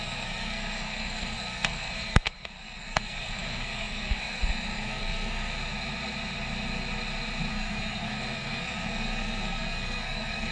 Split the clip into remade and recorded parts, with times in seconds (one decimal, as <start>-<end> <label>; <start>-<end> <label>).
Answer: 0.0-5.6 remade; 5.6-7.5 recorded; 7.5-10.5 remade